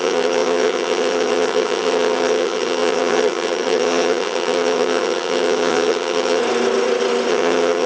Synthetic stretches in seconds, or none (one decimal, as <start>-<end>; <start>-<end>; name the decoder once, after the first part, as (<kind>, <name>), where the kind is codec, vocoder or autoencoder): 0.0-6.4 (vocoder, HiFi-GAN); 7.3-7.9